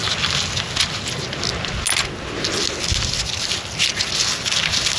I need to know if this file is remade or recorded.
recorded